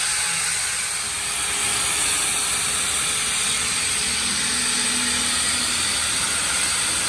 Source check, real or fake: real